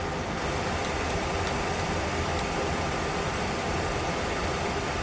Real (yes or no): no